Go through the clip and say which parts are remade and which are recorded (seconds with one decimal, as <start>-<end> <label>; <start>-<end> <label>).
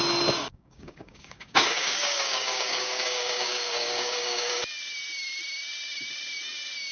0.0-0.5 recorded; 0.5-4.6 remade; 4.6-6.9 recorded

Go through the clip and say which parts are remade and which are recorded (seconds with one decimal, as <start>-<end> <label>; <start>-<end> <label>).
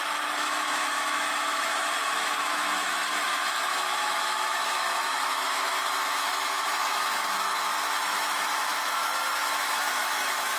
0.0-10.6 remade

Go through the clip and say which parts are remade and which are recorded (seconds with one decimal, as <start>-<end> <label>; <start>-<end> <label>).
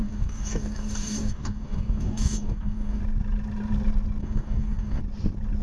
0.0-3.0 remade; 3.0-4.2 recorded; 4.2-5.0 remade; 5.0-5.6 recorded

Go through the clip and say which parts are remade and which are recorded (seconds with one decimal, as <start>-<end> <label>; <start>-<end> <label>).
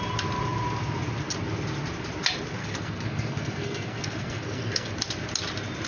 0.0-2.6 recorded; 2.6-4.9 remade; 4.9-5.9 recorded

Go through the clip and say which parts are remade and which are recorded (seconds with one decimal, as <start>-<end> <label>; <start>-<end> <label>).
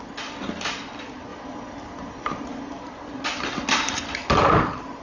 0.0-5.0 recorded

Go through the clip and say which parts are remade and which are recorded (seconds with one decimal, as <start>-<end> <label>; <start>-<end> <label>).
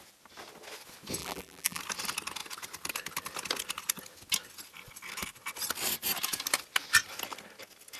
0.0-1.2 recorded; 1.2-1.8 remade; 1.8-8.0 recorded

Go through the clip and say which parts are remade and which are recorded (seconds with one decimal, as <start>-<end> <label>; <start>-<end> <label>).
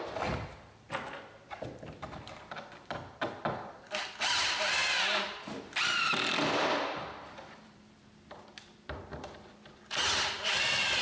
0.0-4.8 remade; 4.8-5.5 recorded; 5.5-11.0 remade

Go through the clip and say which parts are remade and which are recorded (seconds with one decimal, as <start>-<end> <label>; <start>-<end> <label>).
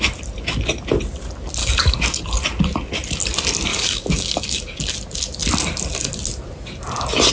0.0-1.6 recorded; 1.6-2.2 remade; 2.2-3.7 recorded; 3.7-4.8 remade; 4.8-7.3 recorded